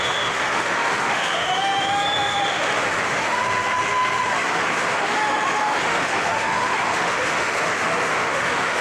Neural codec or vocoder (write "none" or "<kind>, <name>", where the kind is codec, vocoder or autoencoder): autoencoder, DAC-VAE